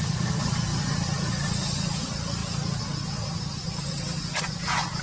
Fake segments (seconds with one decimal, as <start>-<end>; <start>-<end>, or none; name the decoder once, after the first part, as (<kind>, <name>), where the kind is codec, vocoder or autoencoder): none